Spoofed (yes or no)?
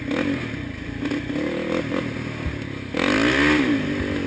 no